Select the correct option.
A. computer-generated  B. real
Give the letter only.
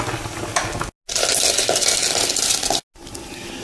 B